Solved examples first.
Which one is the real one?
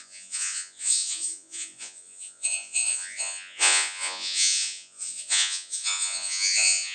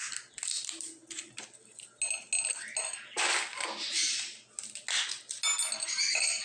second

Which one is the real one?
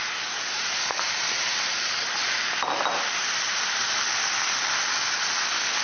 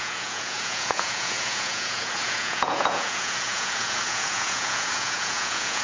first